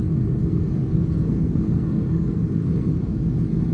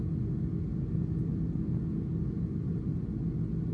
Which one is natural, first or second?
second